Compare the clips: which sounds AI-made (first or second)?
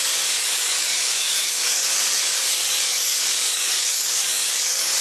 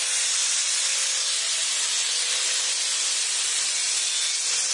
first